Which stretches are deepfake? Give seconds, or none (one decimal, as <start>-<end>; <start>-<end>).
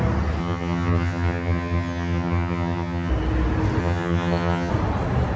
0.4-3.1; 3.8-4.7